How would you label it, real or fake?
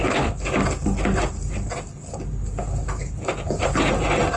real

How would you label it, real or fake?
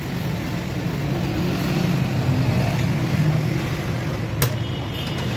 real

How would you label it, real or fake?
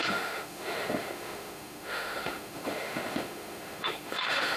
fake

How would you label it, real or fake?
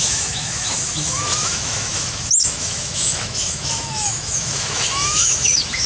fake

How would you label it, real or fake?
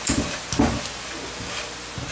real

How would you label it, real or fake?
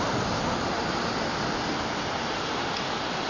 real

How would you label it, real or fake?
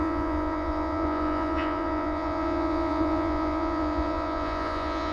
fake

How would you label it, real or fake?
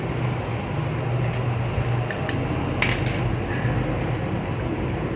real